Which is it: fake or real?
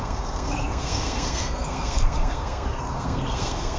fake